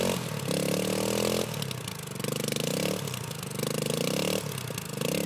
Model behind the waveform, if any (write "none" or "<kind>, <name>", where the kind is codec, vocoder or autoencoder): none